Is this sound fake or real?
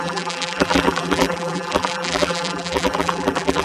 fake